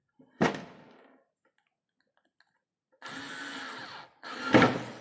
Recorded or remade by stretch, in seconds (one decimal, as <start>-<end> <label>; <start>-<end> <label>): 0.0-5.0 recorded